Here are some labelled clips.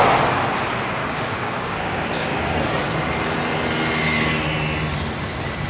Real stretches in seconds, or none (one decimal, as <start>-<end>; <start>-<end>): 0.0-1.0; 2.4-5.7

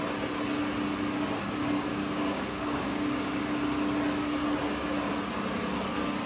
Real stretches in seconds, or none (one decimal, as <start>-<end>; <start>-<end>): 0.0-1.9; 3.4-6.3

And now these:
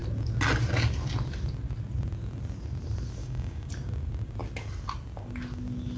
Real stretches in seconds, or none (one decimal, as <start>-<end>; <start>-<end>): 0.0-3.2; 3.7-6.0